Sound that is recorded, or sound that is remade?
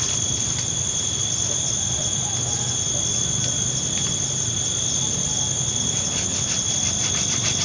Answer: recorded